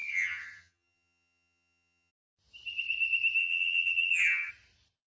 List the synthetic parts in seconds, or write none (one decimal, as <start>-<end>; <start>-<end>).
0.0-2.1; 3.4-4.5

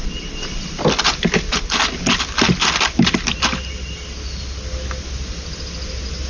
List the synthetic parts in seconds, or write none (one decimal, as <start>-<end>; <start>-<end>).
none

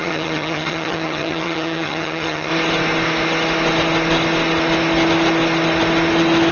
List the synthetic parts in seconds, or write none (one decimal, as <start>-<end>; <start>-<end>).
0.0-2.5

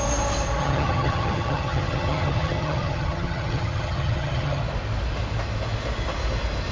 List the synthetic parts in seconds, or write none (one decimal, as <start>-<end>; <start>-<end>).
0.6-4.6